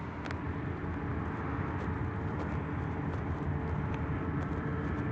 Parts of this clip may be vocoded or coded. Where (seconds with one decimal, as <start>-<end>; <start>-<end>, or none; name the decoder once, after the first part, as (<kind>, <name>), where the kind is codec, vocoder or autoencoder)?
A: none